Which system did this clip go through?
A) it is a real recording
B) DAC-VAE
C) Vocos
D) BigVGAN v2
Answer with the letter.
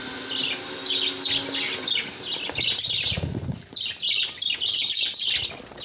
A